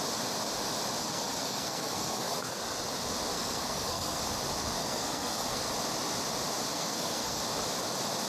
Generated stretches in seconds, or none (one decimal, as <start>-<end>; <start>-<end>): 1.0-2.6; 3.3-4.2; 4.8-5.7; 6.7-7.4